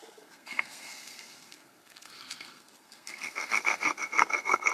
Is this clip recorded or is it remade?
remade